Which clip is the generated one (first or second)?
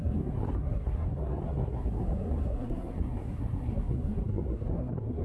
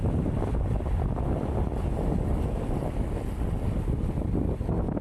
first